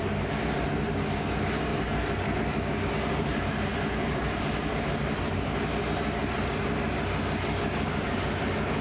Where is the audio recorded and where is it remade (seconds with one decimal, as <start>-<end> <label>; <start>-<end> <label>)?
0.0-1.7 recorded; 1.7-2.4 remade; 2.4-3.7 recorded; 3.7-4.4 remade; 4.4-8.8 recorded